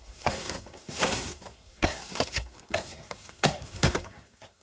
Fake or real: fake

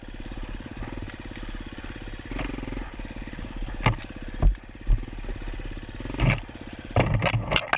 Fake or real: real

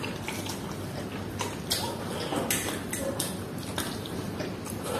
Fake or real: real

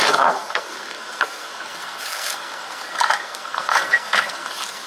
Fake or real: fake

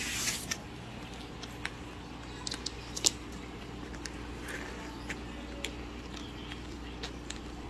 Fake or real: real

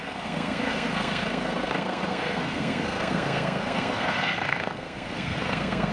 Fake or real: fake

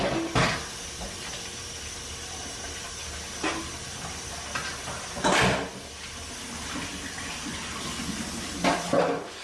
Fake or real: real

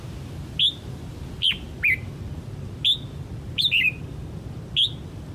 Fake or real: real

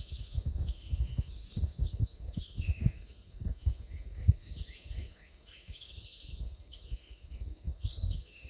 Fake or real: fake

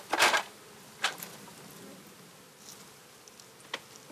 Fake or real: real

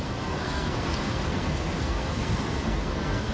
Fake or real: fake